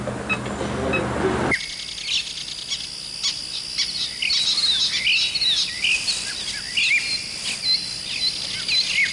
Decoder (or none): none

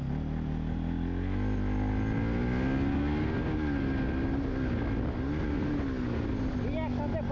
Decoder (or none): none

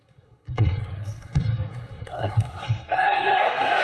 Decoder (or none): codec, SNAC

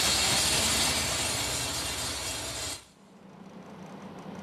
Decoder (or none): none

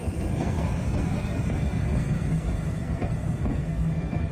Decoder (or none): codec, SNAC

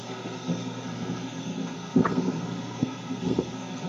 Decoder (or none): codec, SNAC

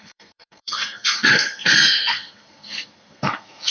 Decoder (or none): codec, SNAC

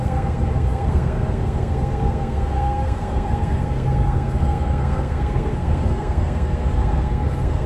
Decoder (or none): codec, SNAC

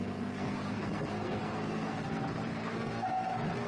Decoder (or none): codec, SNAC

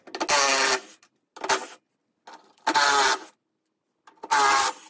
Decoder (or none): none